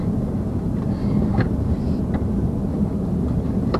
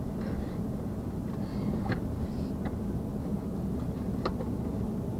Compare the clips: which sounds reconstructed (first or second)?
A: first